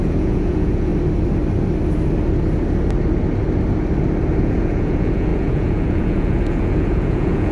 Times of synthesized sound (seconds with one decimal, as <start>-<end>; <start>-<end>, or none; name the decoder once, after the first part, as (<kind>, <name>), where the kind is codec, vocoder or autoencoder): 0.0-0.9 (vocoder, Vocos); 4.4-7.5

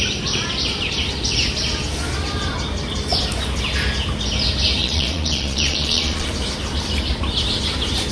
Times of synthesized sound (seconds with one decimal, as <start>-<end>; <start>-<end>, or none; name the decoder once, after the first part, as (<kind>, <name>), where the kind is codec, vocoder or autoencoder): 4.8-6.3 (vocoder, Vocos)

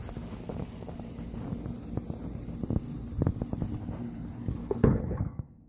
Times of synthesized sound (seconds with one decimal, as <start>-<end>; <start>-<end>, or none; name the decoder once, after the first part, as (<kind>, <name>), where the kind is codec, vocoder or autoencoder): 4.6-5.2 (codec, HILCodec)

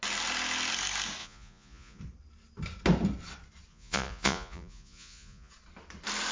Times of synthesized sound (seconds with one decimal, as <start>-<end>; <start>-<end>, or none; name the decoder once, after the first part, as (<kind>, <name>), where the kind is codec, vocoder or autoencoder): 1.2-2.0 (vocoder, Vocos); 3.7-5.5